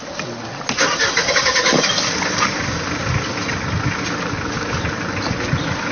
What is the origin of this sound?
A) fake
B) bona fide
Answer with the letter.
B